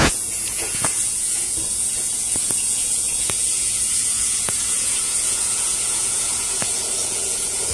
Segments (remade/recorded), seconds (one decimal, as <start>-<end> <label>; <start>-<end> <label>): 0.0-7.7 remade